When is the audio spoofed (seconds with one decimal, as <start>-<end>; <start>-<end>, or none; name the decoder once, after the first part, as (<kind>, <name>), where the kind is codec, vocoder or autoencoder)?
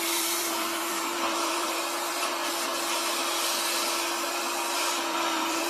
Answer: 0.0-2.4 (vocoder, BigVGAN v2); 4.3-5.7